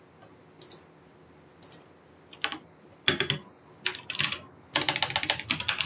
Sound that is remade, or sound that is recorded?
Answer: recorded